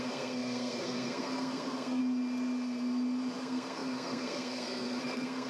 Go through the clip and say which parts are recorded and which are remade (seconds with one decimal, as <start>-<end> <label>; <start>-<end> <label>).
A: 0.0-2.0 remade; 2.0-3.4 recorded; 3.4-5.5 remade